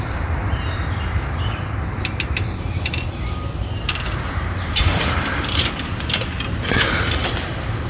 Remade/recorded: remade